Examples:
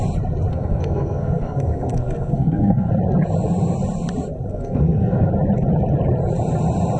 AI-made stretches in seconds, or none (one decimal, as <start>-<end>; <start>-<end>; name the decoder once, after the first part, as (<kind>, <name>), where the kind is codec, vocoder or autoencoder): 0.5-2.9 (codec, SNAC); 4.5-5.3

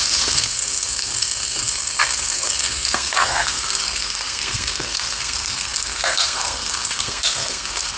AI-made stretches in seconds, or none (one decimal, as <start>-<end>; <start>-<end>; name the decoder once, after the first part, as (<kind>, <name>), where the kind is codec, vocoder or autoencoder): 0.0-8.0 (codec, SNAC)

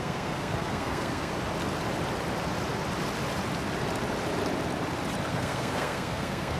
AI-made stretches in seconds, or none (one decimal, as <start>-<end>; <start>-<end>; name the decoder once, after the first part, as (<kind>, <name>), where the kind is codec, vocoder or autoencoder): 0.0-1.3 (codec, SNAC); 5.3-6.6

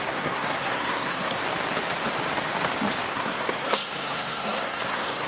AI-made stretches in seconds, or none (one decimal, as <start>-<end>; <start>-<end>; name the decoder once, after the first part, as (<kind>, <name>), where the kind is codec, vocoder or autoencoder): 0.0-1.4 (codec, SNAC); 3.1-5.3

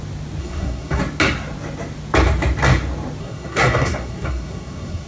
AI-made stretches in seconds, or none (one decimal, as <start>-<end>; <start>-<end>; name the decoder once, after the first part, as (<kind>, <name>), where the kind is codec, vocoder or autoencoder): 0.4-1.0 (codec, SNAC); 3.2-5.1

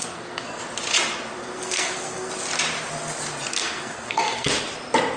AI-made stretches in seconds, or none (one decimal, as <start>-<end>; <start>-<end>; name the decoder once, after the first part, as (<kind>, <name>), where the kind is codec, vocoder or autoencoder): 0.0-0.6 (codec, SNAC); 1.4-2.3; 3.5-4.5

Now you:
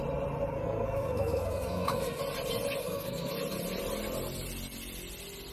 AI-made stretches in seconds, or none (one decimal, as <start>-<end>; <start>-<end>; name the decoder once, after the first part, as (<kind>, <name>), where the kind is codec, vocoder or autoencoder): 0.5-2.2 (codec, SNAC); 2.8-3.3

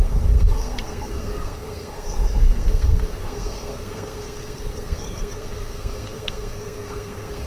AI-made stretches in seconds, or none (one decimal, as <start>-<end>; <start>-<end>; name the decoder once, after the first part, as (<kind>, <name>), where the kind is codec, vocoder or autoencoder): 0.0-7.5 (codec, SNAC)